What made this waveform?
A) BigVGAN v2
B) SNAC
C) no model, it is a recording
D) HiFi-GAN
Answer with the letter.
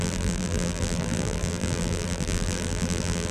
A